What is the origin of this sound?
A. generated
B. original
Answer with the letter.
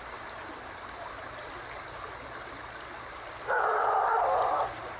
B